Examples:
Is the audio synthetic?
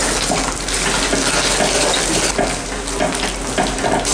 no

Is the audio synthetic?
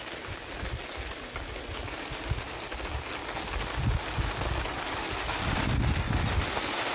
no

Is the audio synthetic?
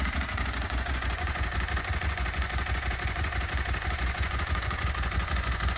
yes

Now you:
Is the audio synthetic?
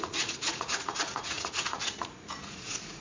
yes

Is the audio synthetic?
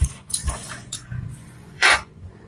yes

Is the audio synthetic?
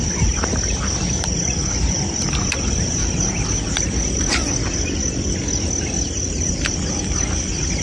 no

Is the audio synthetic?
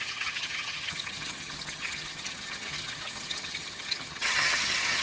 yes